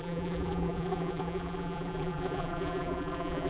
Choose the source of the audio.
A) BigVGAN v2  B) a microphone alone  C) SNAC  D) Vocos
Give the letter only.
A